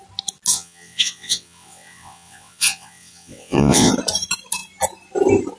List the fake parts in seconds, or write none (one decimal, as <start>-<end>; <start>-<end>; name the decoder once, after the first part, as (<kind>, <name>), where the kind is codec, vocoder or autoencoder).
0.5-3.9 (vocoder, WaveNeXt)